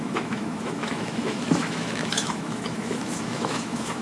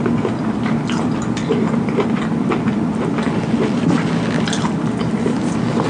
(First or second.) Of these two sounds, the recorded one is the second